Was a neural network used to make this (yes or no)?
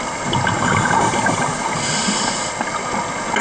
no